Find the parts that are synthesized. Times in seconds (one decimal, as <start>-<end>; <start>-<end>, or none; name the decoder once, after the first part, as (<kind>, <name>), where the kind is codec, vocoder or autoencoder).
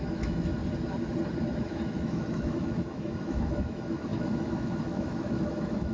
0.0-0.6 (autoencoder, DAC-VAE); 1.5-5.9